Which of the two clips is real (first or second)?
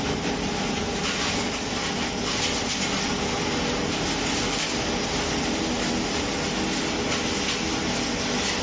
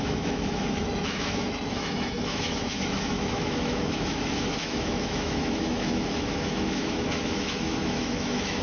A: first